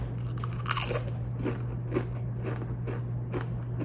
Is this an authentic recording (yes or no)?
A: yes